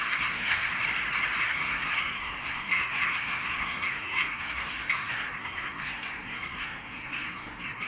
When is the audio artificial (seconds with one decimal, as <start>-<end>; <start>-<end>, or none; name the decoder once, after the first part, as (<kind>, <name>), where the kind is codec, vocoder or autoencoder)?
0.0-0.7 (codec, SNAC); 1.4-7.9